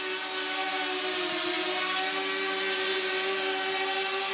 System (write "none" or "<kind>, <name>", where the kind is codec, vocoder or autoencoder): none